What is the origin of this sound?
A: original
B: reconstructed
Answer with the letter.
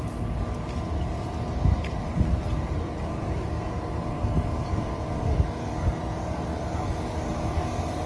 A